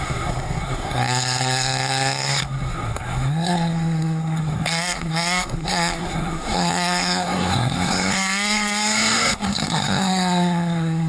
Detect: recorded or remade remade